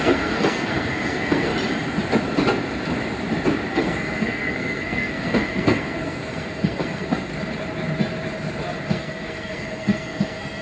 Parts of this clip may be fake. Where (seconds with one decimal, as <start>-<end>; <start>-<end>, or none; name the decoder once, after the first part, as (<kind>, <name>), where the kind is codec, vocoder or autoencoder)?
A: 0.0-1.5 (codec, SNAC); 3.7-7.3; 8.9-10.6